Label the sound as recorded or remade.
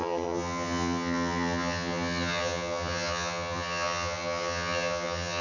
remade